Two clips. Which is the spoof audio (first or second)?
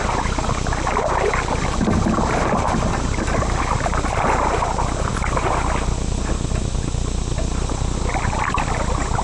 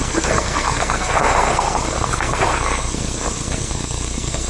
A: second